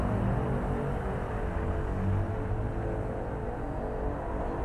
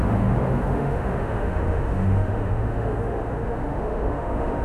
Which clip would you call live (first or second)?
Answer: first